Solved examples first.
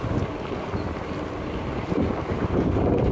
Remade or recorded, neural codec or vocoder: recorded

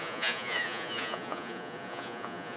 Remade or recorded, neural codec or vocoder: remade, vocoder, Vocos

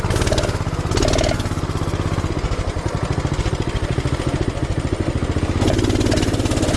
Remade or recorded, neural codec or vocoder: recorded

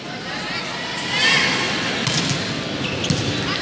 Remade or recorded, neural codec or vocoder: recorded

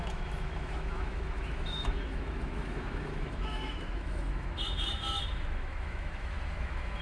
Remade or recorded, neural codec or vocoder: remade, autoencoder, DAC-VAE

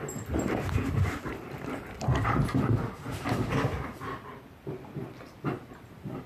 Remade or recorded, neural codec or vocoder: recorded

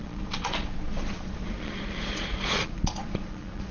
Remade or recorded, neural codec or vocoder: remade, vocoder, Vocos